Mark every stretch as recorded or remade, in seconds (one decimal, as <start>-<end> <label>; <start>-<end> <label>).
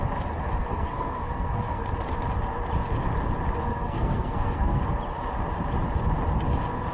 0.0-0.6 recorded; 0.6-1.9 remade; 1.9-3.7 recorded; 3.7-4.8 remade; 4.8-6.9 recorded